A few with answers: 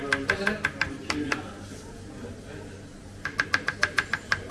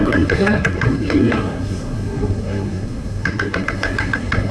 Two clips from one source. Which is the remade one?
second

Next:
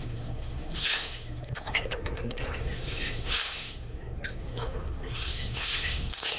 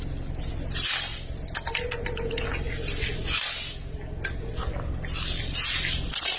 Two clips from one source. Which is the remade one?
first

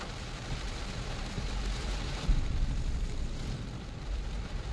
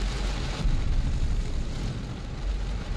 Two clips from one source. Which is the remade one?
first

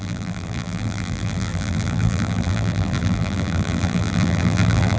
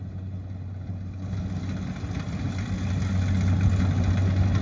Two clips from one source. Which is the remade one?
first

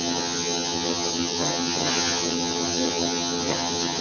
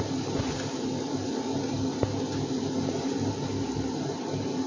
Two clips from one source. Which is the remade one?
first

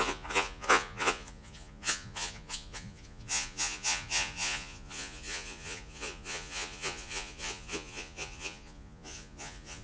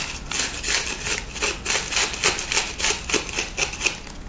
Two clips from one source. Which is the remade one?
first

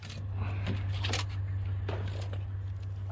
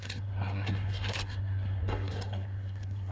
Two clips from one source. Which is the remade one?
second